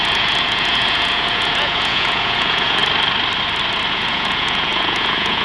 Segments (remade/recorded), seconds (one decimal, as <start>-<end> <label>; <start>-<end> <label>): 0.0-2.8 remade; 2.8-3.9 recorded; 3.9-5.4 remade